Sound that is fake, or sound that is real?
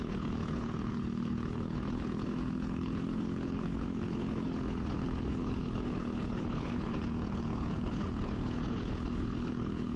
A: fake